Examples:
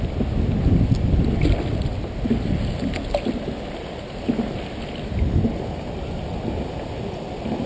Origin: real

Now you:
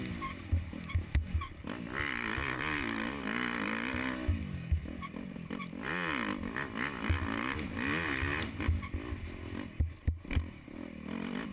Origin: real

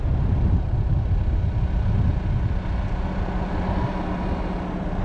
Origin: real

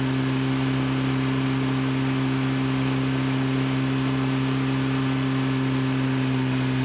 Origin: real